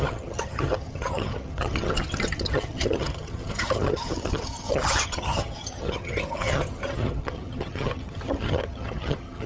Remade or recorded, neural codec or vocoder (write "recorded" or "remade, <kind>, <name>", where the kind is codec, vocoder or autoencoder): remade, vocoder, HiFi-GAN